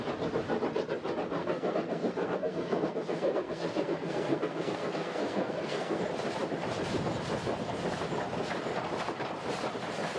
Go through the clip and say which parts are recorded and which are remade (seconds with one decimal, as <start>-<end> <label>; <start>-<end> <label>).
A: 0.0-1.4 recorded; 1.4-6.0 remade; 6.0-10.2 recorded